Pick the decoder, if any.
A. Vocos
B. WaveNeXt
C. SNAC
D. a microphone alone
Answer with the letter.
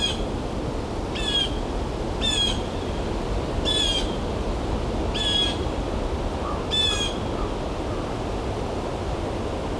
D